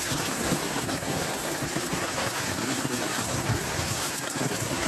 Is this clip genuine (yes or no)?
no